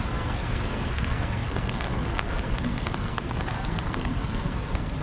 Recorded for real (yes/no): no